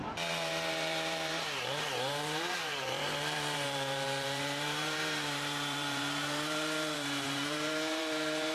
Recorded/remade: remade